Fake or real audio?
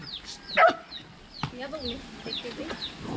real